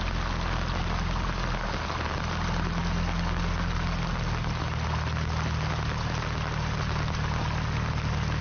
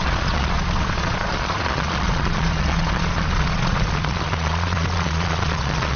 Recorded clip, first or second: first